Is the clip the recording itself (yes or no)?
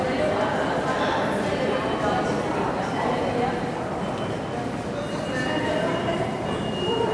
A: yes